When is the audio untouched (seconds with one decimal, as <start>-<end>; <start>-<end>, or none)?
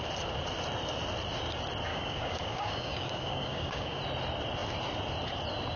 0.0-1.9; 4.0-5.8